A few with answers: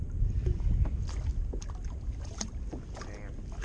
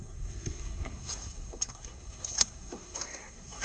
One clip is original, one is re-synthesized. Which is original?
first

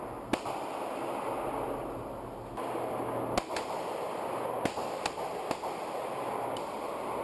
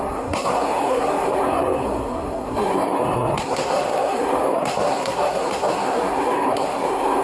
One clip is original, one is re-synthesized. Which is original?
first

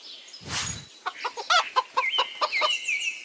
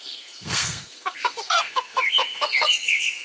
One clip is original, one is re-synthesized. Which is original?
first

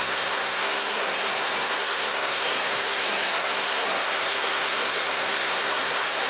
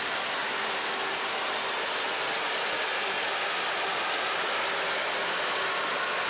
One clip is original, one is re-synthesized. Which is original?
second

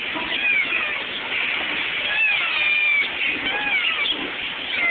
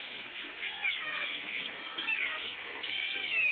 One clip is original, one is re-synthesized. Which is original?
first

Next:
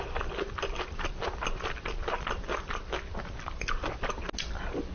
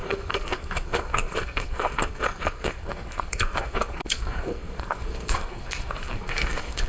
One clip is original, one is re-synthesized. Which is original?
first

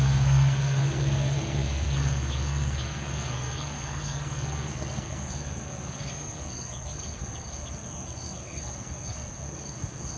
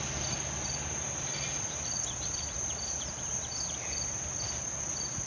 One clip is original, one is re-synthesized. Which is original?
second